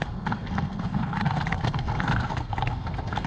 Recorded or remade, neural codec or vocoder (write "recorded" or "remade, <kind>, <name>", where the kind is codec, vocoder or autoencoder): remade, codec, SNAC